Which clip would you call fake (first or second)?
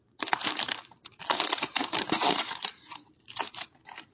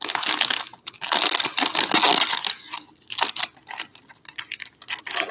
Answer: first